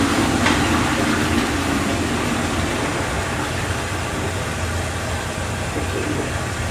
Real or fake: real